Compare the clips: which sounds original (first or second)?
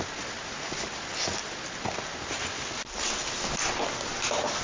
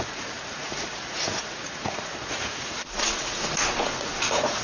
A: first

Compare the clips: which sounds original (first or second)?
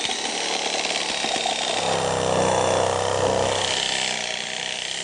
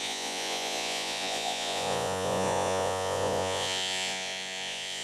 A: first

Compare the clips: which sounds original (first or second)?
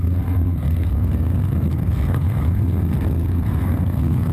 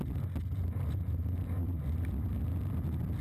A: second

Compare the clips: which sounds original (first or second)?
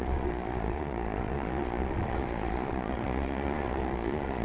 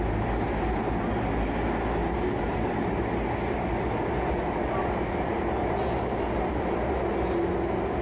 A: second